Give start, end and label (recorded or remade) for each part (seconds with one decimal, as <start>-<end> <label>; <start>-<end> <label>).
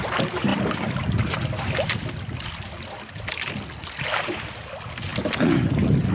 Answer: 0.0-6.1 recorded